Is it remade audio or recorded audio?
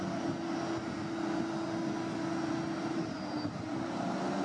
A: recorded